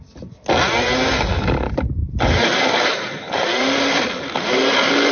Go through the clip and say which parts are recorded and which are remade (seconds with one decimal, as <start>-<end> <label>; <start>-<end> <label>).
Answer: 0.0-2.0 recorded; 2.0-4.5 remade; 4.5-5.1 recorded